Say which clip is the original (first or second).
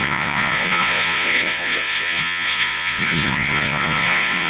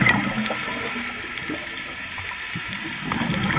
second